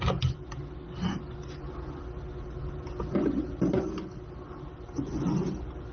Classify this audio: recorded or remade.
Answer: recorded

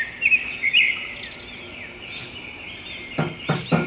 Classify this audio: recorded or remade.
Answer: recorded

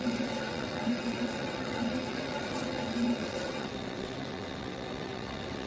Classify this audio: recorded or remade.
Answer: remade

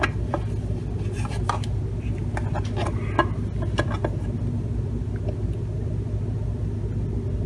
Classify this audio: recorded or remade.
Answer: recorded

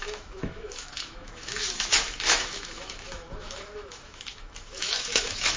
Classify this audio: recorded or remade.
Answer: remade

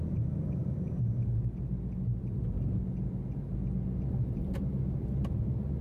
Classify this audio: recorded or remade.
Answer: recorded